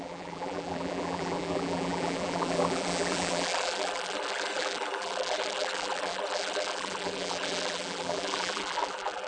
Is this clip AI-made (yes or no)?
yes